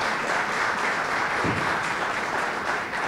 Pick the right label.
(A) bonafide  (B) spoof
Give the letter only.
B